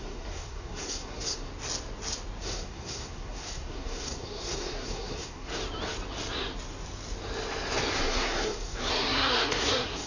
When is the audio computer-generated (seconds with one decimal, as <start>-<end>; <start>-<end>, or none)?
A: 0.0-1.5; 2.4-5.6; 8.1-10.1